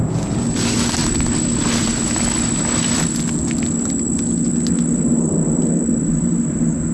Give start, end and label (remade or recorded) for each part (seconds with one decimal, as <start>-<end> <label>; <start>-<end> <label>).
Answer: 0.0-6.9 recorded